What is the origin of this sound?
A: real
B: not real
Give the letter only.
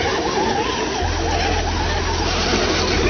A